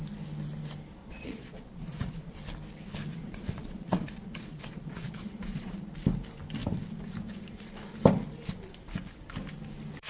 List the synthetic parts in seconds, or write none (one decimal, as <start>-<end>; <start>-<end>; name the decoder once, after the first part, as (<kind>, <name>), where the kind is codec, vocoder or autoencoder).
1.0-2.3 (vocoder, Vocos); 3.1-5.8